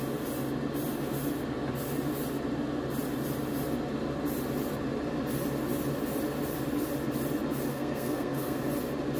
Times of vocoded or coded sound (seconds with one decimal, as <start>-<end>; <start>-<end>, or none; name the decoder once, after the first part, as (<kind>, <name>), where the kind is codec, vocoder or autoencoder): 7.7-8.6 (codec, SNAC)